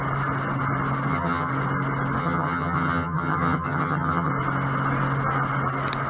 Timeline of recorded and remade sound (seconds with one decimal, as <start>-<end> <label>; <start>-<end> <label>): 0.0-1.1 recorded; 1.1-1.5 remade; 1.5-2.2 recorded; 2.2-4.3 remade; 4.3-6.1 recorded